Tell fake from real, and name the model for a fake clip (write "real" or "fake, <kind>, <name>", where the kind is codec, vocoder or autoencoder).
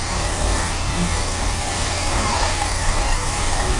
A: fake, codec, DAC